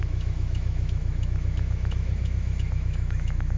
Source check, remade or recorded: remade